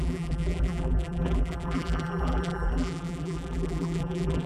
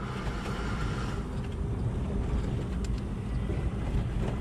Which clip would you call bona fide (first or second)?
second